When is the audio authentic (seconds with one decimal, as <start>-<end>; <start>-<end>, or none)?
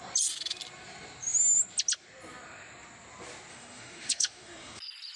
0.0-3.5; 4.8-5.2